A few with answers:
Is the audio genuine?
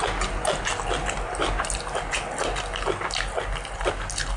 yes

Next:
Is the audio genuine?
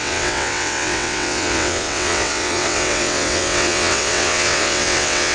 no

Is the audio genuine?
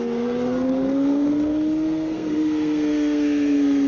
no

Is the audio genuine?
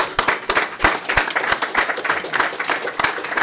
yes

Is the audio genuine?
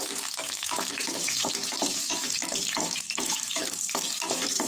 no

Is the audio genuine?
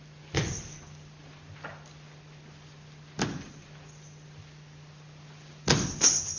yes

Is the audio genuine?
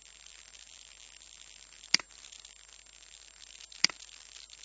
yes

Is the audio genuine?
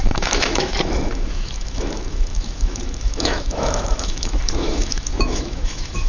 no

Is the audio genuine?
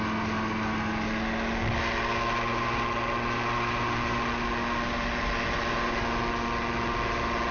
yes